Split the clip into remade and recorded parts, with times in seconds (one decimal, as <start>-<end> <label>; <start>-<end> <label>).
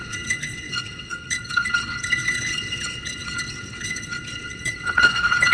0.0-5.5 remade